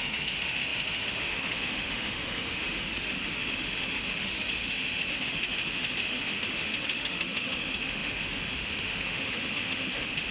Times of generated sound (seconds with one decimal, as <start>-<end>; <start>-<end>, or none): 0.0-10.3